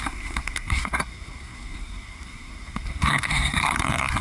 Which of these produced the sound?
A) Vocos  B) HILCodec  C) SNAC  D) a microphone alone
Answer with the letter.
C